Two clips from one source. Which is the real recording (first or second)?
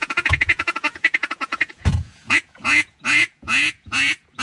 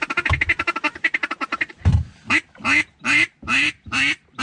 second